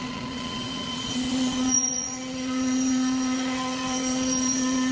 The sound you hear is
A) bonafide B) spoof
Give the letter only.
B